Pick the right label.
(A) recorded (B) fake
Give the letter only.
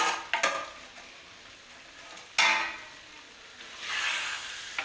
A